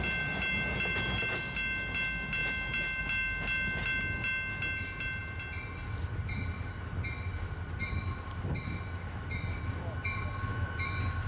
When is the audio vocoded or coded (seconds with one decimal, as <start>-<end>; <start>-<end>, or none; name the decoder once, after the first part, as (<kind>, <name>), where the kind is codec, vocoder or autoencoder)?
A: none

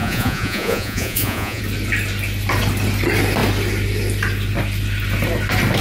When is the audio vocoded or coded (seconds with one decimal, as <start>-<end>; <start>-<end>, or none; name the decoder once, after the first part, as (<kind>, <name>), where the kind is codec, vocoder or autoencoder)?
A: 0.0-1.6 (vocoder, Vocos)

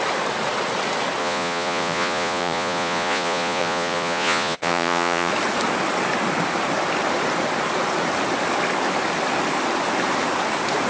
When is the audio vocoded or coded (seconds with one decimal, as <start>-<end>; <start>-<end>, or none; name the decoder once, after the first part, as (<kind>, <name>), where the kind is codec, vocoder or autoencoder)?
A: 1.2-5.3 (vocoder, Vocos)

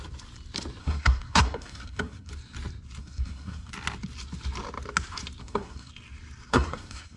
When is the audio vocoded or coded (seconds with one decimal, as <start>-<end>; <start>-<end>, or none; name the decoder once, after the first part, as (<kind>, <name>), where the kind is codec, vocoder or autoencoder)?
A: 0.8-2.3 (codec, SNAC); 3.0-3.7; 5.4-5.9; 6.5-7.2